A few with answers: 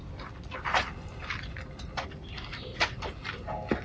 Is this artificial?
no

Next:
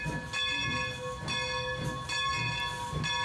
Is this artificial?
no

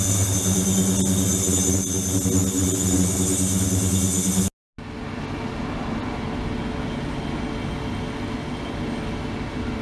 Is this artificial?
no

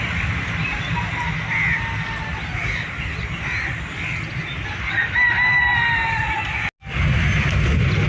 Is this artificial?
no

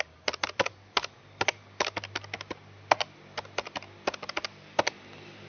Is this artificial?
no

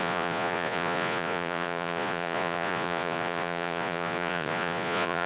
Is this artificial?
yes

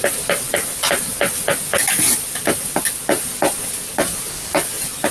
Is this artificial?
no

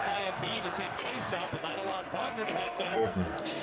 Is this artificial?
yes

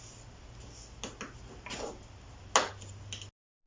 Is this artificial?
no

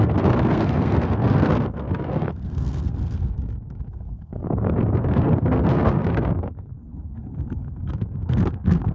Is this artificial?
yes